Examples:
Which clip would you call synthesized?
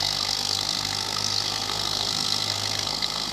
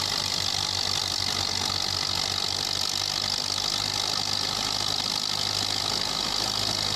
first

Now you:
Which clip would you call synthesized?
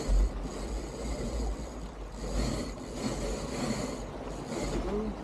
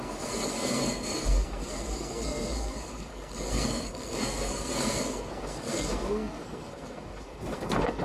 second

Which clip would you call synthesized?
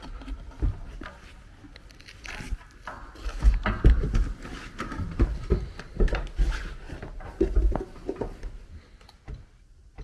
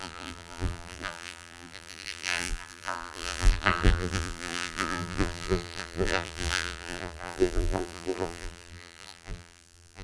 second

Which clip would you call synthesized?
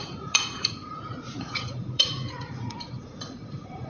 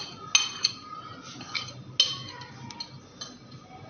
first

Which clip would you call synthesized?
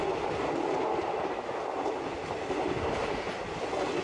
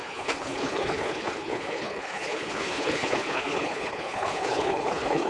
second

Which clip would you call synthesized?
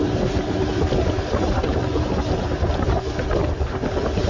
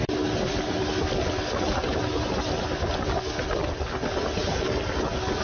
first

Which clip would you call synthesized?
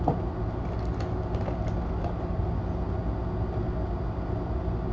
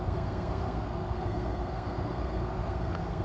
second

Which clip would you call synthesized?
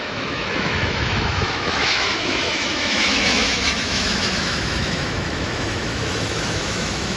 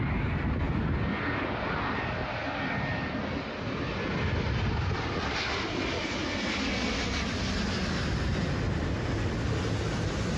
first